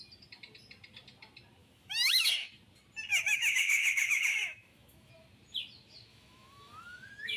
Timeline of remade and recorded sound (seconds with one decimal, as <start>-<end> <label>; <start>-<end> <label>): 0.0-1.6 recorded; 1.6-2.3 remade; 2.3-3.1 recorded; 3.1-5.1 remade; 5.1-6.1 recorded; 6.1-7.4 remade